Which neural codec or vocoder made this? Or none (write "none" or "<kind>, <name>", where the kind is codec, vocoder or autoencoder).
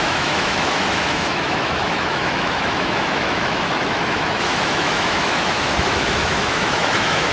autoencoder, DAC-VAE